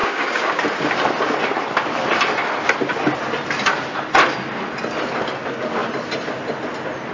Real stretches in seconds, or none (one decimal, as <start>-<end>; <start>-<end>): 0.6-7.1